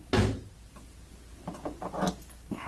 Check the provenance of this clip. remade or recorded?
recorded